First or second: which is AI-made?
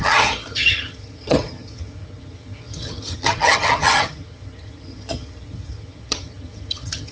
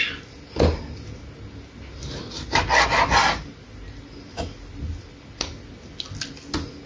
first